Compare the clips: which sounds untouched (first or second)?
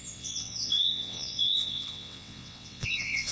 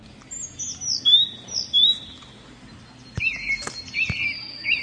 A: second